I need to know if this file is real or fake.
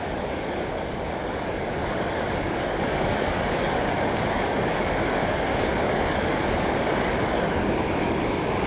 fake